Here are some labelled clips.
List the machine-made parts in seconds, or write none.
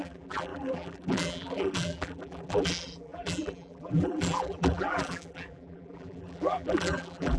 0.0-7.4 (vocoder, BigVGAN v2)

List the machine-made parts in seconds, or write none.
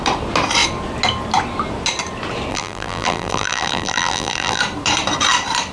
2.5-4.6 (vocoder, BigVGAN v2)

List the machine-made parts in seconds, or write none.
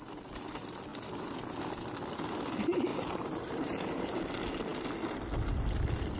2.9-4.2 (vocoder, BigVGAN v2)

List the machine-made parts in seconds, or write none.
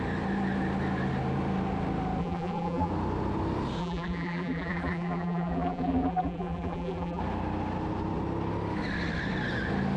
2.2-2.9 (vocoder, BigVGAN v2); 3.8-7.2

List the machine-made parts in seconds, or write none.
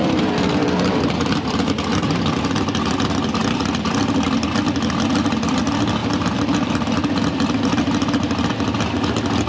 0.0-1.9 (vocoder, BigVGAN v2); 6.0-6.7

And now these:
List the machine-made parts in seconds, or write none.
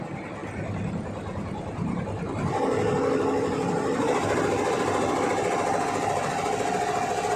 none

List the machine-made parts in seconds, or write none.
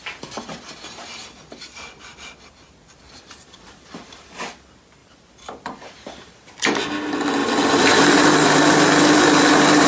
5.0-6.9 (vocoder, BigVGAN v2)